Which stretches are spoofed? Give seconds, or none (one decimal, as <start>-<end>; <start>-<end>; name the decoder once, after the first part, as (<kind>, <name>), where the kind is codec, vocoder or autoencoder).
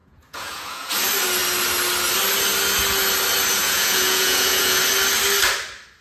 0.0-0.9 (vocoder, Vocos); 3.6-4.8